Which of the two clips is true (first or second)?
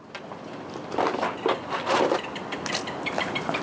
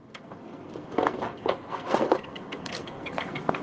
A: first